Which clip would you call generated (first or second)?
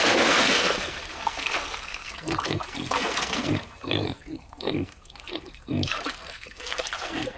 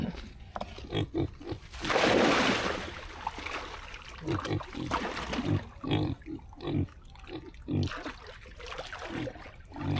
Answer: first